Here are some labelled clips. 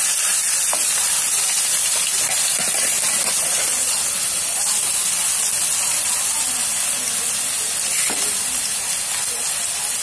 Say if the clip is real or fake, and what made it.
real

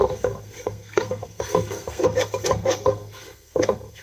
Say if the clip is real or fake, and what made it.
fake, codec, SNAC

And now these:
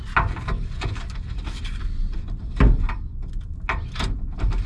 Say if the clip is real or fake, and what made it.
real